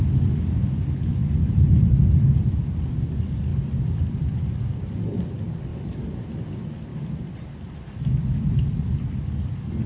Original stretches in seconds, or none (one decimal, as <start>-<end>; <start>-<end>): 0.0-9.9